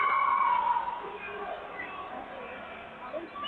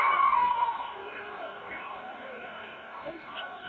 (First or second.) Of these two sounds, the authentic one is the first